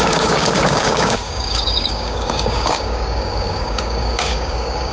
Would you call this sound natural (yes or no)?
no